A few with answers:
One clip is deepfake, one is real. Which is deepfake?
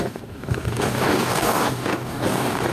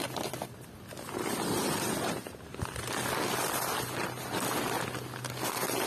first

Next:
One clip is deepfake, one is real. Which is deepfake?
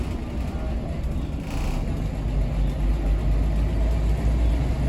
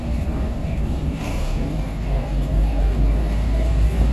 second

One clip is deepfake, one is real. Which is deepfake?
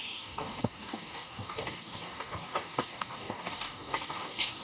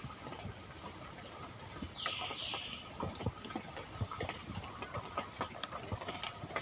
first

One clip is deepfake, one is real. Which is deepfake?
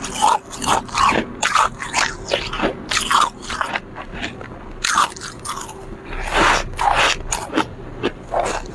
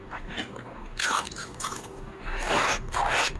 second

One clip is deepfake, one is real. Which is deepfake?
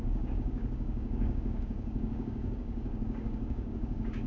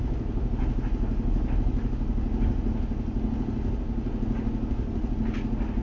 first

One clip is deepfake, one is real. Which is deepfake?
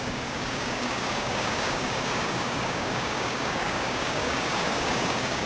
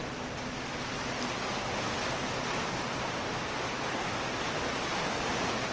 first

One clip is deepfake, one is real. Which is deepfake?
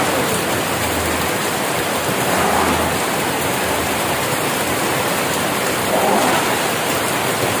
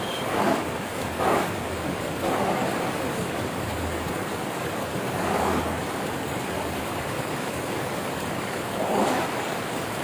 second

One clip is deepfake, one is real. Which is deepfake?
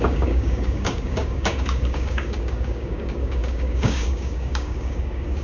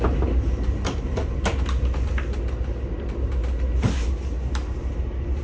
first